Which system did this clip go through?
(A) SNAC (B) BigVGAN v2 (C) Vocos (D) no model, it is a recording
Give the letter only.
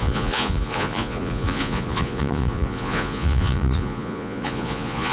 C